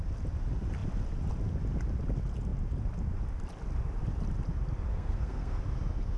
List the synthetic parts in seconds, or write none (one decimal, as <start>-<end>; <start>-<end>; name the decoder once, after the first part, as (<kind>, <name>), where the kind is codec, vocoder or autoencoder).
4.9-5.6 (codec, SNAC)